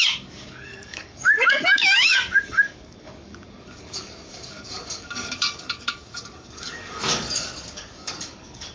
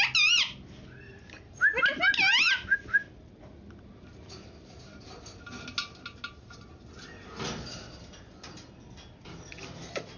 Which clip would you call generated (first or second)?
first